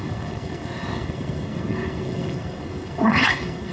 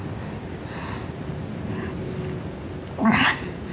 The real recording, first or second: second